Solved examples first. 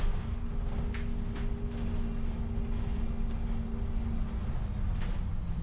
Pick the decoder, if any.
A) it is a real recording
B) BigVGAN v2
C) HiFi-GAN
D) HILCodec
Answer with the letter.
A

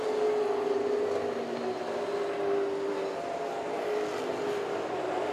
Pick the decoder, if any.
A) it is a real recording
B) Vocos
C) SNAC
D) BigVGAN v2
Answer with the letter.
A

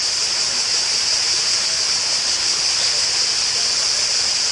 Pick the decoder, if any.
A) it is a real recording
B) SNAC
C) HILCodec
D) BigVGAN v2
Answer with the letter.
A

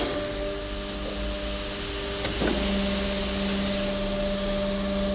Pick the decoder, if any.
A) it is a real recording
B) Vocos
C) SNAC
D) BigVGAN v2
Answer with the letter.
A